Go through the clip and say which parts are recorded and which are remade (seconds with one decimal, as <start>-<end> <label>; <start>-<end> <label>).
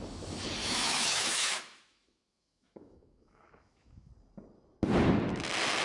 0.0-0.6 recorded; 0.6-4.1 remade; 4.1-5.8 recorded